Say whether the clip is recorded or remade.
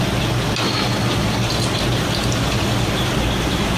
recorded